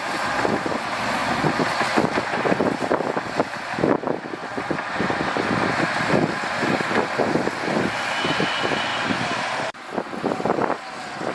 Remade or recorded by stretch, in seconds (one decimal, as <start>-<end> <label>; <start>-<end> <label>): 0.0-2.3 recorded; 2.3-3.3 remade; 3.3-11.3 recorded